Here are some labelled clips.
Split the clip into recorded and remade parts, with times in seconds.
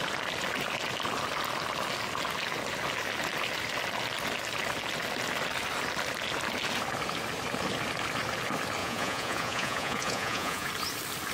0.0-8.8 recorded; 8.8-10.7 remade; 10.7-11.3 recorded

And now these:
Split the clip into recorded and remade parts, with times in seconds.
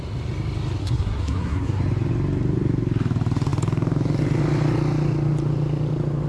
0.0-0.8 recorded; 0.8-1.8 remade; 1.8-6.3 recorded